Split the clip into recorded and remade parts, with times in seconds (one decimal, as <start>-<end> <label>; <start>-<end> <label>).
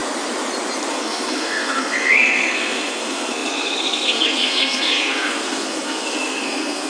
0.0-0.9 recorded; 0.9-6.9 remade